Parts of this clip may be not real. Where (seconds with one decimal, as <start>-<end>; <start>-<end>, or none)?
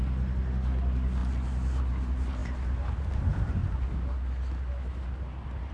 none